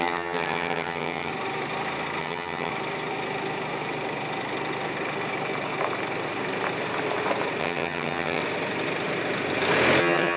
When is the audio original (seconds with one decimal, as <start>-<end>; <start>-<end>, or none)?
1.3-2.2; 2.7-7.6; 8.4-10.0